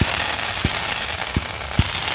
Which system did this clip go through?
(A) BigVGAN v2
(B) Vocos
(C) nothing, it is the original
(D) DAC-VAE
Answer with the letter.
C